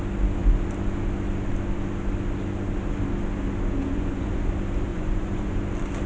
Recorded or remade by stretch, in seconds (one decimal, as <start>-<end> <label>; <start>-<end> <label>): 0.0-3.8 recorded; 3.8-4.4 remade; 4.4-4.9 recorded; 4.9-5.6 remade; 5.6-6.1 recorded